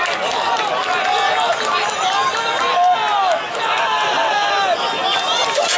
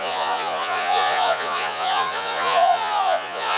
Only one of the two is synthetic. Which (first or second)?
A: second